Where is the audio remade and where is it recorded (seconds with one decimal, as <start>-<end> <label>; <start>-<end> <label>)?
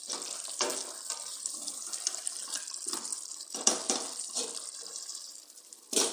0.0-3.1 remade; 3.1-3.7 recorded; 3.7-6.1 remade